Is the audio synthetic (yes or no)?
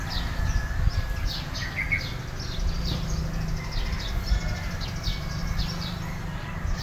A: no